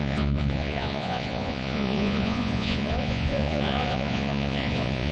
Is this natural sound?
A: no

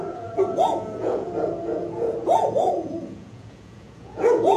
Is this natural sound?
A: no